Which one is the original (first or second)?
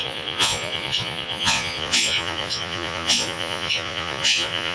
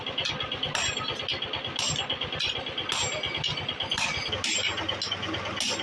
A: second